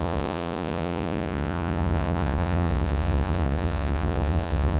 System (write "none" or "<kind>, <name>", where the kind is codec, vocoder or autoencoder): vocoder, Vocos